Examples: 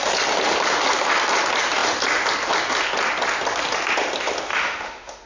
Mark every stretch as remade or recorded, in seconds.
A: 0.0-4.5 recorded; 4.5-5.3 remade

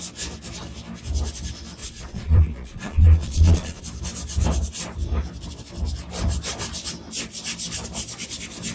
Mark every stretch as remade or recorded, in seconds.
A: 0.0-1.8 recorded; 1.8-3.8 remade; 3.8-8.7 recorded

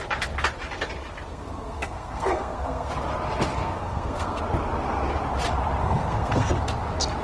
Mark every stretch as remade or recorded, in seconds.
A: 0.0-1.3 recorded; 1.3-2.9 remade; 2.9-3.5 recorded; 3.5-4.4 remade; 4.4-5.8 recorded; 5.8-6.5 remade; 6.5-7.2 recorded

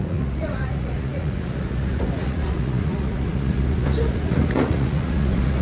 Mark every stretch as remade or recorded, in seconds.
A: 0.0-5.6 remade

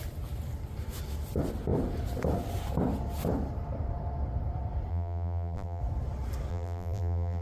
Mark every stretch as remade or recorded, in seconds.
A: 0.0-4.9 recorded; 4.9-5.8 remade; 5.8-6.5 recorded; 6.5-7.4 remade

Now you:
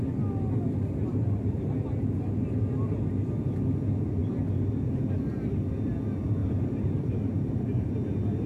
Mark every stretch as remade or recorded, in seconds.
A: 0.0-1.1 recorded; 1.1-1.9 remade; 1.9-6.4 recorded; 6.4-7.9 remade; 7.9-8.5 recorded

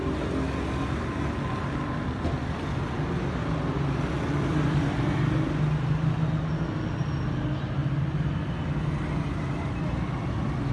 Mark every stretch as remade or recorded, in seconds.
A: 0.0-10.7 recorded

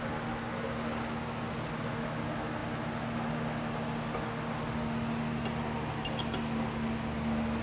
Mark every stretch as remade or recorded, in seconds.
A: 0.0-7.6 recorded